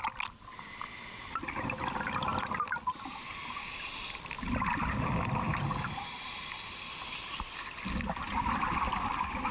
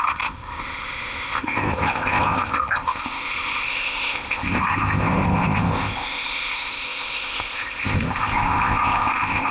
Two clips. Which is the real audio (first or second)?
first